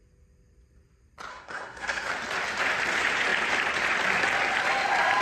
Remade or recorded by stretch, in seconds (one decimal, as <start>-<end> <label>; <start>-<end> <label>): 0.0-1.3 recorded; 1.3-2.1 remade; 2.1-5.2 recorded